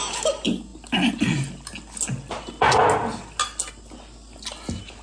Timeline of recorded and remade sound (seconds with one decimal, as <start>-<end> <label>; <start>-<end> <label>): 0.0-5.0 recorded